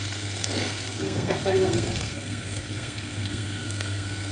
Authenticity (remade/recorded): remade